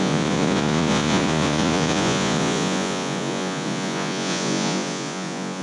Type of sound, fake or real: fake